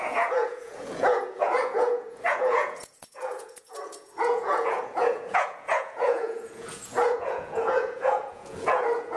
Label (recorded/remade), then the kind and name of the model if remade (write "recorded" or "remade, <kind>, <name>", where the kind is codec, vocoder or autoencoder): remade, vocoder, Vocos